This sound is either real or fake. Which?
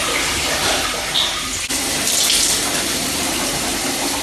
real